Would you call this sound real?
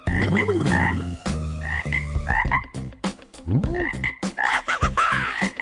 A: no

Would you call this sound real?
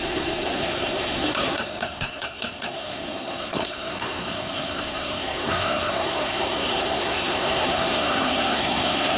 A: no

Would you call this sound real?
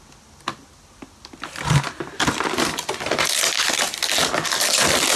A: yes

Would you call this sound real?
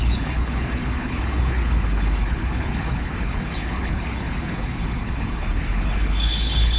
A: no